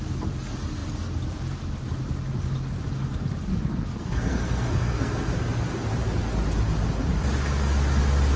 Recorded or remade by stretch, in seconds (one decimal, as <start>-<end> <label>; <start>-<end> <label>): 0.0-3.5 recorded; 3.5-5.3 remade; 5.3-8.4 recorded